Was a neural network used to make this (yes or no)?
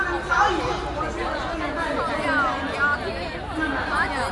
no